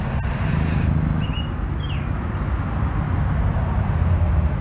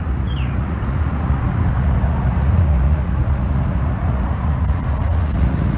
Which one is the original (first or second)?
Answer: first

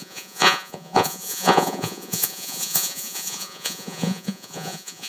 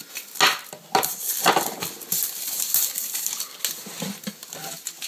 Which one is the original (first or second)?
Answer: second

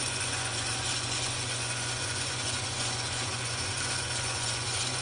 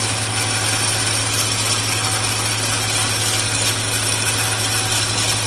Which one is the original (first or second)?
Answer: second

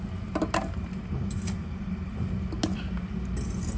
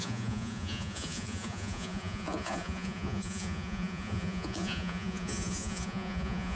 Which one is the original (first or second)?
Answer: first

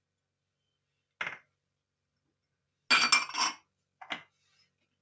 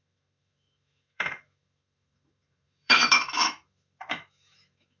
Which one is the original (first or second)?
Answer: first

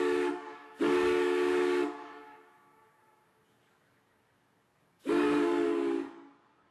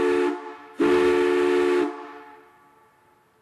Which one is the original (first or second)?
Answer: second